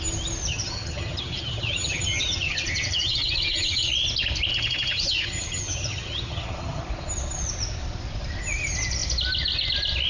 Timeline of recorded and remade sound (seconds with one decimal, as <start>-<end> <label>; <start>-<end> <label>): 0.0-0.5 recorded; 0.5-3.9 remade; 3.9-4.5 recorded; 4.5-6.8 remade; 6.8-10.1 recorded

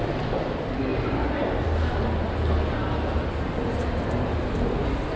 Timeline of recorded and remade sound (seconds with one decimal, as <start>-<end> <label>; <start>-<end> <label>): 0.0-5.2 recorded

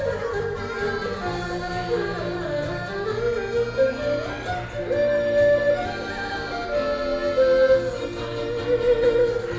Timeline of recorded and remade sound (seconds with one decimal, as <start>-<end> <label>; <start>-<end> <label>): 0.0-9.6 recorded

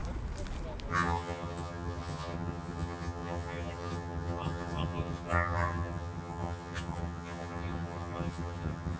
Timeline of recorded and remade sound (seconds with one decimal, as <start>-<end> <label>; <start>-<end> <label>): 0.0-0.9 recorded; 0.9-9.0 remade

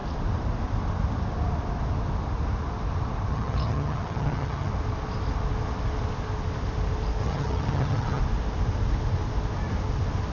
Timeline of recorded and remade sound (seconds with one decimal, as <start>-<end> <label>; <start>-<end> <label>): 0.0-3.3 recorded; 3.3-4.7 remade; 4.7-7.2 recorded; 7.2-8.2 remade; 8.2-10.3 recorded

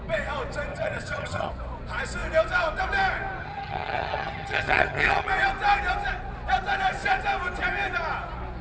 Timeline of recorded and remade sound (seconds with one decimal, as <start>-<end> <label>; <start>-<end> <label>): 0.0-0.7 recorded; 0.7-1.5 remade; 1.5-3.4 recorded; 3.4-5.3 remade; 5.3-8.6 recorded